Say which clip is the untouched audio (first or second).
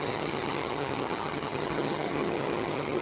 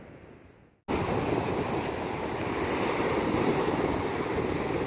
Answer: second